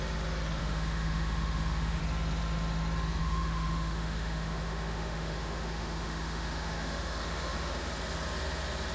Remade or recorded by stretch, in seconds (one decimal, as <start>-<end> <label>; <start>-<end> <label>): 0.0-0.6 recorded; 0.6-2.0 remade; 2.0-3.2 recorded; 3.2-7.9 remade; 7.9-8.9 recorded